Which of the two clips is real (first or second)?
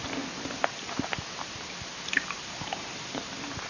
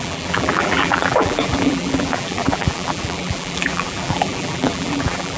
first